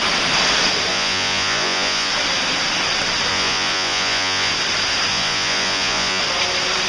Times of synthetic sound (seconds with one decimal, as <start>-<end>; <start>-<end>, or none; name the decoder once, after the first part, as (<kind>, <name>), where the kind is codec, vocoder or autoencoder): 0.9-2.1 (vocoder, Vocos); 3.3-4.5; 5.1-6.2